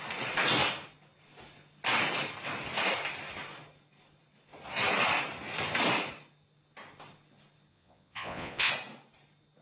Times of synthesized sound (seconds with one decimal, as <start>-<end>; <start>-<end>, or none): 7.7-8.7